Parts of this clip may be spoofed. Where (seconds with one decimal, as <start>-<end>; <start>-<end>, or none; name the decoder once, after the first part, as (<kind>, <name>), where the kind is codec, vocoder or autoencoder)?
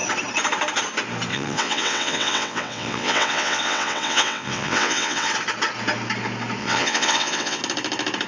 1.3-5.3 (vocoder, WaveNeXt); 6.6-7.6